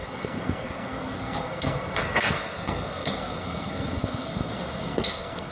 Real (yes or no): no